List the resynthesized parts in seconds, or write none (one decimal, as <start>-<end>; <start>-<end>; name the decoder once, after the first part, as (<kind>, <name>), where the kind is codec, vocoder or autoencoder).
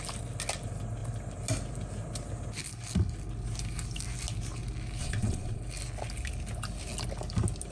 5.0-5.6 (vocoder, Vocos)